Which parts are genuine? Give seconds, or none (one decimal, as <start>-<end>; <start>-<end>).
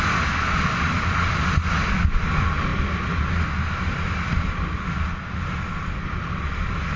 0.0-7.0